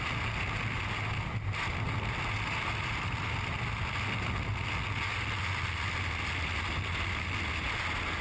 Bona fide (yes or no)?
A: yes